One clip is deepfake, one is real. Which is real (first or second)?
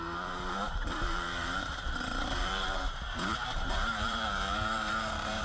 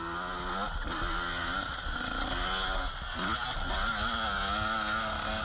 second